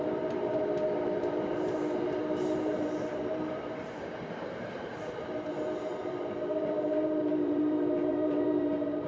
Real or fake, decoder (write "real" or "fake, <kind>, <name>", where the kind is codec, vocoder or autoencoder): fake, vocoder, BigVGAN v2